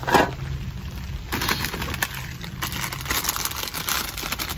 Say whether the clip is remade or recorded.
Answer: recorded